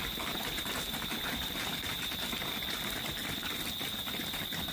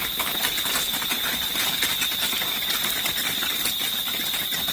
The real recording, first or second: first